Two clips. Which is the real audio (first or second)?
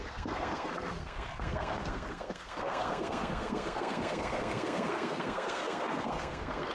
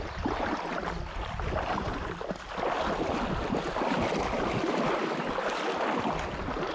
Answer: second